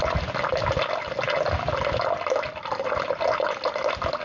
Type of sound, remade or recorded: recorded